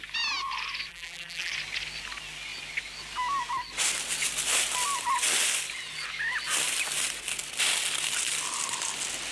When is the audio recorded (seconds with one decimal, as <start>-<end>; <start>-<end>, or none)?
0.0-0.9; 1.5-9.3